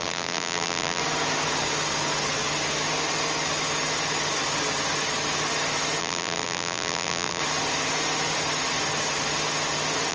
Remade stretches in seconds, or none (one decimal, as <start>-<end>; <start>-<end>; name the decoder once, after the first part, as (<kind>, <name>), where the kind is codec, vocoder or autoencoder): 0.0-1.0 (vocoder, BigVGAN v2); 6.0-7.4